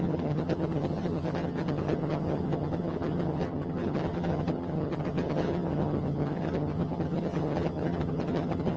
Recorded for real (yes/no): no